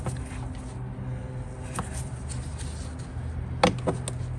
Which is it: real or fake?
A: real